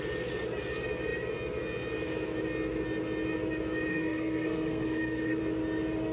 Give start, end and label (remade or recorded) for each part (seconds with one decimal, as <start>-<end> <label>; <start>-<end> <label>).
0.0-3.9 recorded; 3.9-5.4 remade; 5.4-6.1 recorded